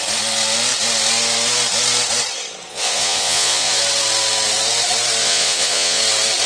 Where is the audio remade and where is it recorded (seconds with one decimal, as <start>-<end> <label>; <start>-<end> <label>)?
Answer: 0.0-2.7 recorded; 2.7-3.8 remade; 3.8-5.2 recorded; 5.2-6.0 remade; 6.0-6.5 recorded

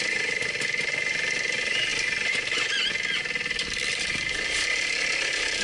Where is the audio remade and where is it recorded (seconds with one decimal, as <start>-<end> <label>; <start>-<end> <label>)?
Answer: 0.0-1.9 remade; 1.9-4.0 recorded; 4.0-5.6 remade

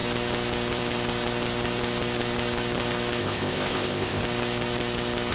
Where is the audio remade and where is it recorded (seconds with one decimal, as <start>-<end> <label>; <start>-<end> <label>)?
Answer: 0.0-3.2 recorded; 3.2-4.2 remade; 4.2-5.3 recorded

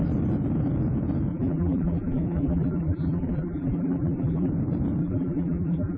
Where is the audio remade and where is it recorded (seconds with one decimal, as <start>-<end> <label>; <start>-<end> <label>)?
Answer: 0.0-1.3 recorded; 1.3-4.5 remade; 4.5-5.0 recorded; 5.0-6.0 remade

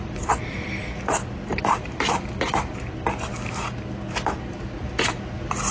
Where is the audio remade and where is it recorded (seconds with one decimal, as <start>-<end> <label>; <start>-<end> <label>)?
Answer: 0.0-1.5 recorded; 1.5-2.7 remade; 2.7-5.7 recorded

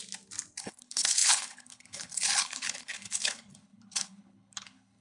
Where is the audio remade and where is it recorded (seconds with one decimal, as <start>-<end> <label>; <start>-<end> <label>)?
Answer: 0.0-0.6 recorded; 0.6-5.0 remade

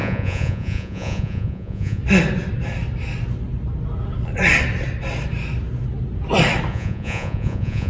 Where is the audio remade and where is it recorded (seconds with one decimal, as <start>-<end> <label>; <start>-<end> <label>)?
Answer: 0.0-2.0 remade; 2.0-6.7 recorded; 6.7-7.9 remade